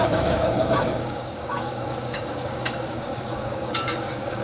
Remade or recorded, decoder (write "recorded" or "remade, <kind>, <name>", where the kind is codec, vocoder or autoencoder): remade, codec, DAC